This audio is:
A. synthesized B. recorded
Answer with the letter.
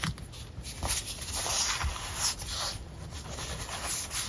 B